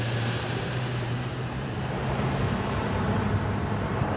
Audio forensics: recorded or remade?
remade